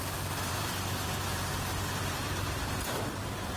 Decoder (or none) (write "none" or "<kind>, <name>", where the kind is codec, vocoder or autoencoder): vocoder, BigVGAN v2